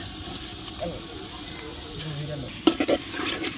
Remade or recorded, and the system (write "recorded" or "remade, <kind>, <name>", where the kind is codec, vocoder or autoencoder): recorded